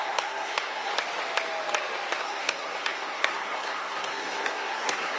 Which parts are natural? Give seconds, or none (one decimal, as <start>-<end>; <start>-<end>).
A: 0.9-2.2